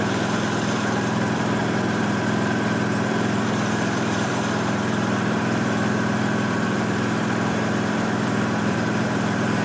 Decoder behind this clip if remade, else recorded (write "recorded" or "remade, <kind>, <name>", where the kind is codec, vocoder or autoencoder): remade, vocoder, BigVGAN v2